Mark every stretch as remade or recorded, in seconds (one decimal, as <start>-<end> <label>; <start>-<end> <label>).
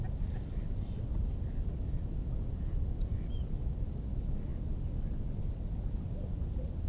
0.0-6.9 recorded